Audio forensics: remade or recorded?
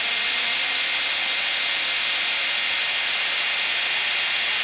recorded